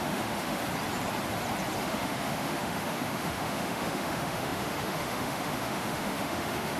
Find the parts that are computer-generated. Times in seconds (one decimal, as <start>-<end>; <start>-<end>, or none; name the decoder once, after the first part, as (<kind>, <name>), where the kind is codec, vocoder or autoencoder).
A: 0.0-0.6 (autoencoder, DAC-VAE); 1.8-6.8